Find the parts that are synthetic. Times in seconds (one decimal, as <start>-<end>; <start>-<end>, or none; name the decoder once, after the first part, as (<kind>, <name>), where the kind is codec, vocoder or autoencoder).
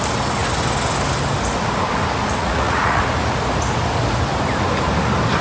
2.4-3.0 (vocoder, Vocos)